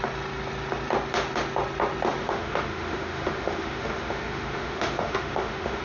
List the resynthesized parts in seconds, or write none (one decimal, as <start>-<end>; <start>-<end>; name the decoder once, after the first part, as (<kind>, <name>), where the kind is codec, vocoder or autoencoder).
2.2-5.8 (autoencoder, DAC-VAE)